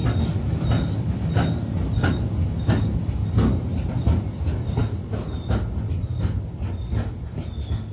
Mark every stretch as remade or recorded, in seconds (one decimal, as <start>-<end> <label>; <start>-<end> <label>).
0.0-7.9 recorded